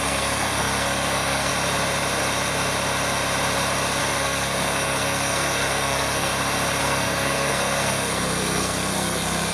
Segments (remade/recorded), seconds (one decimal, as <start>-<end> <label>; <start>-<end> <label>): 0.0-1.5 remade; 1.5-4.0 recorded; 4.0-6.3 remade; 6.3-6.8 recorded; 6.8-9.5 remade